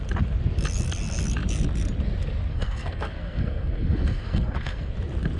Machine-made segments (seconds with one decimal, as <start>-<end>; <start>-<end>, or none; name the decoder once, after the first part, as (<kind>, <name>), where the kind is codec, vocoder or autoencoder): 2.5-4.9 (codec, SNAC)

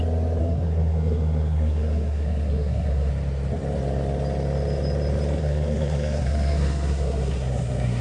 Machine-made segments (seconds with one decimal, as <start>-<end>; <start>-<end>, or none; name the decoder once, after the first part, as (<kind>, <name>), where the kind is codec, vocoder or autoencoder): 0.4-3.1 (codec, SNAC); 5.4-8.0

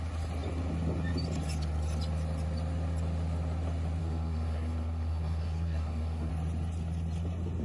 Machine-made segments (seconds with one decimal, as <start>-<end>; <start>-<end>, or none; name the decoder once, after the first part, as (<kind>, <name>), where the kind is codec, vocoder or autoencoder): 4.0-6.3 (codec, SNAC)

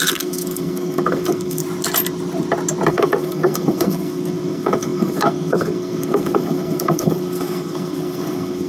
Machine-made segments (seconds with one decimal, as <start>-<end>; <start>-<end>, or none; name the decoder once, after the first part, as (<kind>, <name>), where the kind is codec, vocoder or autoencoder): 0.0-1.6 (codec, SNAC); 2.9-8.7

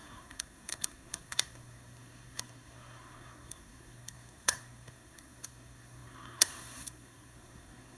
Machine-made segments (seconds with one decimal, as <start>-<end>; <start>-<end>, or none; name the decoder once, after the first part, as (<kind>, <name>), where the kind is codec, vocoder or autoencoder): 0.0-8.0 (codec, SNAC)

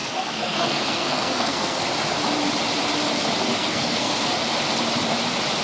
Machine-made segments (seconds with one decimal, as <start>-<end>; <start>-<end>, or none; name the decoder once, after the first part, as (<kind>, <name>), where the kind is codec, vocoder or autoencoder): 0.0-1.8 (codec, SNAC); 3.5-4.3